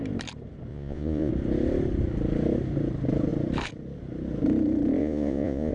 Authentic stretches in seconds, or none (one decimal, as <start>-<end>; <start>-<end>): 0.0-0.7; 1.3-5.0